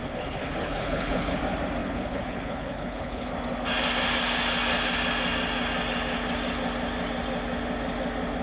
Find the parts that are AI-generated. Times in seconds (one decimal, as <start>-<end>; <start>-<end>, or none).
0.0-1.4; 1.8-3.3